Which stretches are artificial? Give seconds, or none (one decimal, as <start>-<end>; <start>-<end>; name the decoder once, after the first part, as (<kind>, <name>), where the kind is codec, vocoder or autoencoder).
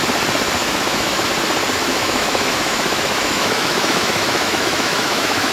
0.6-1.2 (autoencoder, DAC-VAE); 1.9-5.5